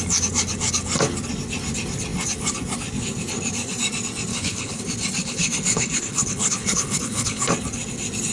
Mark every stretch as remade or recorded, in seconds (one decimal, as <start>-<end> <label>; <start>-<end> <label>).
0.0-4.3 recorded; 4.3-4.8 remade; 4.8-5.2 recorded; 5.2-7.5 remade; 7.5-8.3 recorded